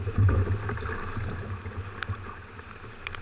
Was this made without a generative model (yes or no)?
yes